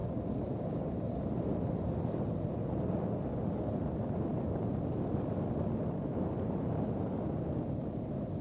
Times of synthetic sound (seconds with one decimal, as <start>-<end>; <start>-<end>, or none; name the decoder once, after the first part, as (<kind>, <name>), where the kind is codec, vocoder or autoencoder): none